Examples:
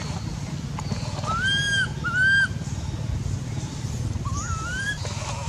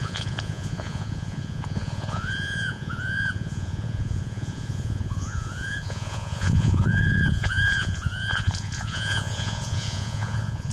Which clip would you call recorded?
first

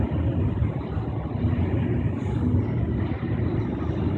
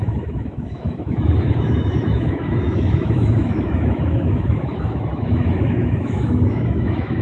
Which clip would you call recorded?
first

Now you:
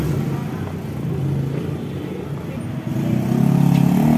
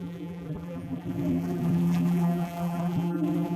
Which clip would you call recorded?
first